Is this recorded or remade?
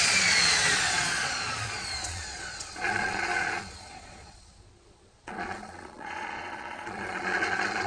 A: remade